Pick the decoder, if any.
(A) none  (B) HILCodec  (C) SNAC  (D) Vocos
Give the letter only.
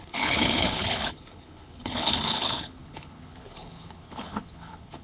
B